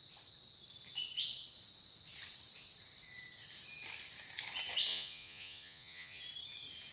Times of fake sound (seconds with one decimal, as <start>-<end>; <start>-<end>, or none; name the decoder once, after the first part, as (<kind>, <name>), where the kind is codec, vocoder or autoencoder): 4.9-6.2 (vocoder, Vocos)